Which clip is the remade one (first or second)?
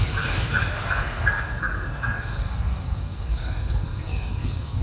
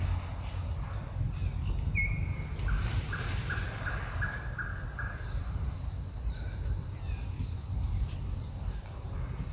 first